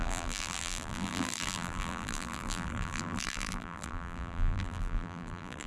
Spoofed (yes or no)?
yes